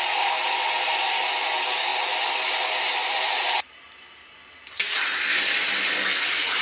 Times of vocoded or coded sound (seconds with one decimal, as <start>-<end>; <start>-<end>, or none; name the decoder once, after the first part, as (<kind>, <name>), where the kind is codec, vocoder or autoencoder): none